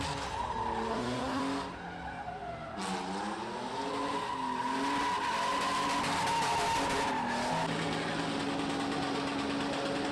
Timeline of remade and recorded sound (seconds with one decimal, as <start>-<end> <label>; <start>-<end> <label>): 0.0-0.9 recorded; 0.9-1.4 remade; 1.4-10.1 recorded